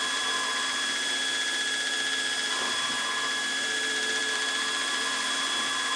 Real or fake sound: fake